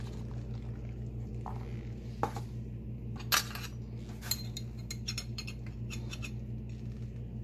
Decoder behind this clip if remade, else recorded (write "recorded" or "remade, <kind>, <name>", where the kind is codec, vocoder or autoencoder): recorded